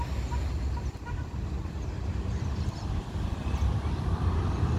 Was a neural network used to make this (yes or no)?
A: no